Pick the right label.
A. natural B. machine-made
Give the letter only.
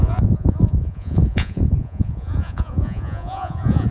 B